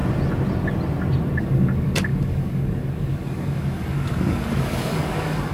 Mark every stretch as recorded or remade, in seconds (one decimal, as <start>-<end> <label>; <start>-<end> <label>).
0.0-1.4 recorded; 1.4-5.5 remade